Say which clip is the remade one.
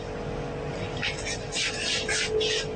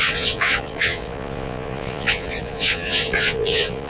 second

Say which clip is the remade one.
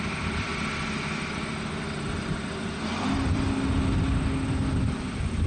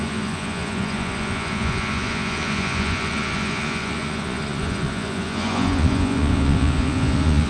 second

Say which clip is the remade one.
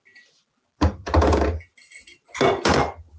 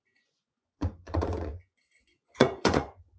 second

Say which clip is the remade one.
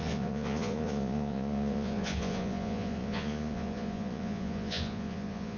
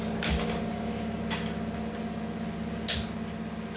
first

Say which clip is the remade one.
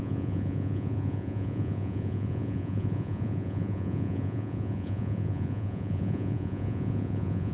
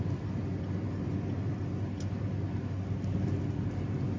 first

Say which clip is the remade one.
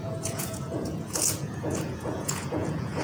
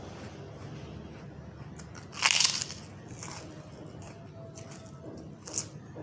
first